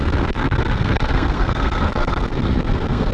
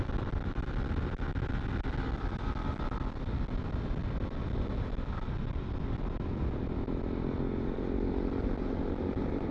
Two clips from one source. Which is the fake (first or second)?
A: first